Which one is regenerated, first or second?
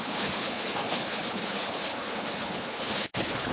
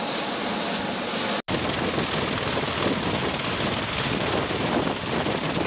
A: first